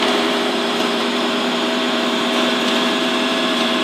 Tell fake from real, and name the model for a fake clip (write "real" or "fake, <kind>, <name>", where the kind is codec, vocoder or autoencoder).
fake, vocoder, BigVGAN v2